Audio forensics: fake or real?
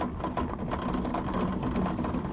real